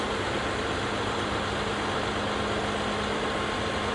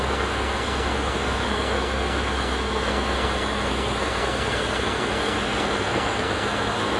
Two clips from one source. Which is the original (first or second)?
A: first